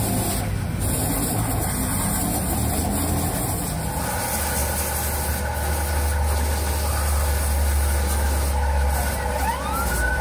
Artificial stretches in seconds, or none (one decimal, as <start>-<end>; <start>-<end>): none